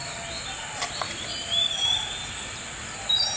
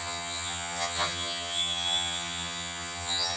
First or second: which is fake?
second